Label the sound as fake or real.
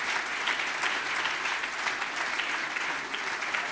real